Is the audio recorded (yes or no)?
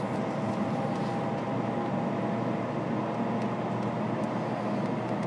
yes